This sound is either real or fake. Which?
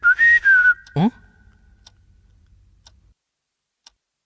real